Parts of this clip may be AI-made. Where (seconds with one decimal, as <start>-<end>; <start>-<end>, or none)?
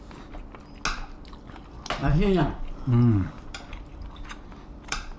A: 2.0-5.2